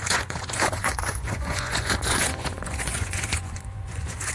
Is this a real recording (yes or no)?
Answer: no